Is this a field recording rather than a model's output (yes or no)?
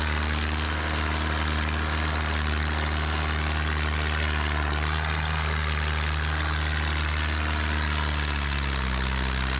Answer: yes